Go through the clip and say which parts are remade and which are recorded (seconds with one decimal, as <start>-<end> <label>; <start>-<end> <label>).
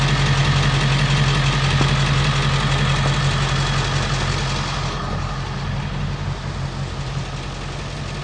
0.0-8.2 recorded